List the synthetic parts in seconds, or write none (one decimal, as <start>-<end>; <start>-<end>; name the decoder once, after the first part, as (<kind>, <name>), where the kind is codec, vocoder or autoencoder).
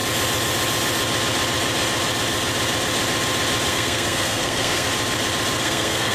3.7-4.9 (codec, SNAC); 5.6-6.1